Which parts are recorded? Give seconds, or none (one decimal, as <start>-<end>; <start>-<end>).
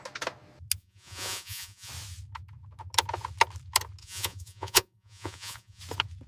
0.0-0.8; 1.9-4.0; 5.8-6.3